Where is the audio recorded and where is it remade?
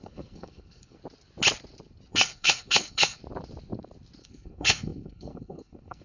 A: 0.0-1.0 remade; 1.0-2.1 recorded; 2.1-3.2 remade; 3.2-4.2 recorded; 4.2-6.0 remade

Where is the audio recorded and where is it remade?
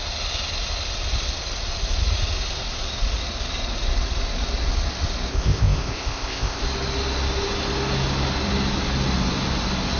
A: 0.0-5.3 recorded; 5.3-6.6 remade; 6.6-10.0 recorded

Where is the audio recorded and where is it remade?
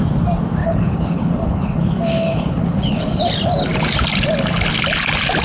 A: 0.0-0.6 recorded; 0.6-3.2 remade; 3.2-5.4 recorded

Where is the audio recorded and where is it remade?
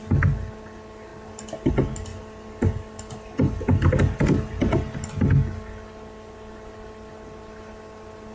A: 0.0-8.3 recorded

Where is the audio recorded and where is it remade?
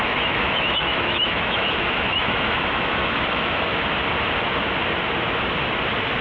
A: 0.0-3.7 remade; 3.7-6.2 recorded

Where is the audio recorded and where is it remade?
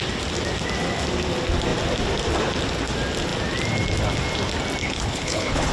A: 0.0-4.8 recorded; 4.8-5.7 remade